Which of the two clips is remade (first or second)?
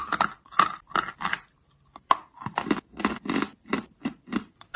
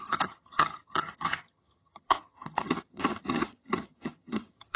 second